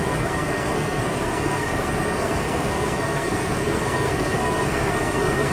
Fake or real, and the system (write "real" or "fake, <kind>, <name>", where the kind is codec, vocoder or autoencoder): fake, codec, SNAC